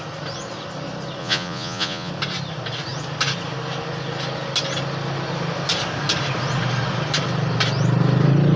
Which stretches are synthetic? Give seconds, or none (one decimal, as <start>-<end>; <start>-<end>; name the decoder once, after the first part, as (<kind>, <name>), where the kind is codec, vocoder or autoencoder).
1.2-2.1 (vocoder, Vocos)

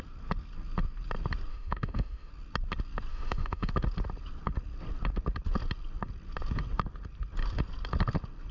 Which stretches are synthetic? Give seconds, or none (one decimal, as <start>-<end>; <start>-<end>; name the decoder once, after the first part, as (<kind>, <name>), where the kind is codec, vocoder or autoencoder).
1.5-2.3 (autoencoder, DAC-VAE); 3.1-3.7

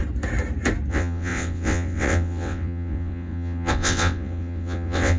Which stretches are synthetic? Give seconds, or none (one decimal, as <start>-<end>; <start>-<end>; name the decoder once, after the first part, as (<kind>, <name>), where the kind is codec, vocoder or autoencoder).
0.9-5.2 (vocoder, WaveNeXt)